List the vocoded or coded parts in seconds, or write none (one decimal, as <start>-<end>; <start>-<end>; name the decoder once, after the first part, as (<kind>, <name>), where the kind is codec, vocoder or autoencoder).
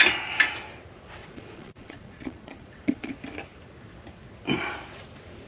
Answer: 1.2-3.1 (vocoder, Vocos)